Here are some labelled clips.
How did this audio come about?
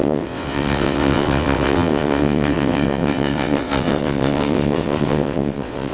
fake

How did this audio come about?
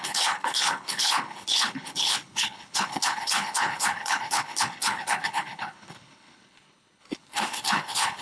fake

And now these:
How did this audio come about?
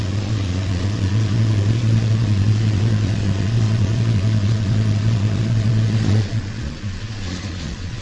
fake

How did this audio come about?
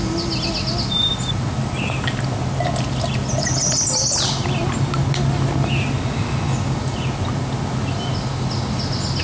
real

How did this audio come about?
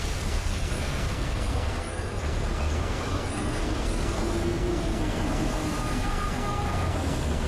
fake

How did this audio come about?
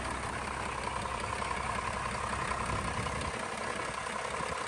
real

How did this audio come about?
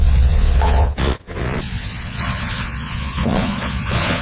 fake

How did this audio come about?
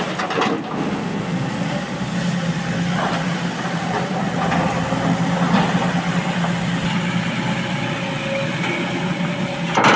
real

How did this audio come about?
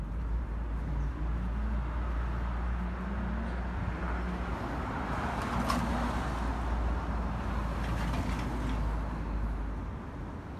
real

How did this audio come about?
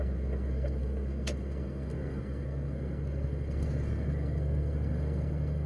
fake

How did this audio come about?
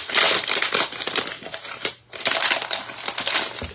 real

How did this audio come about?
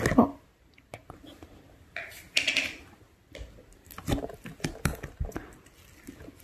real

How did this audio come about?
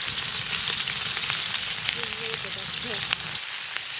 real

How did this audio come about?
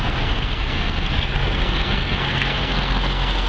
fake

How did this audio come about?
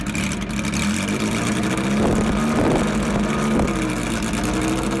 real